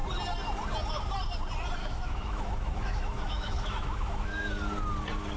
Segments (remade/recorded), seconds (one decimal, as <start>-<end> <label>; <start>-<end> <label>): 0.0-1.8 recorded; 1.8-4.5 remade; 4.5-5.4 recorded